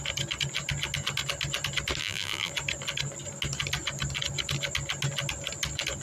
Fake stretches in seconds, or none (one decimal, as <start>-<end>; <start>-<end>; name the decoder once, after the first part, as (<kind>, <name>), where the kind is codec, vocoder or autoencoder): 2.0-2.5 (vocoder, BigVGAN v2)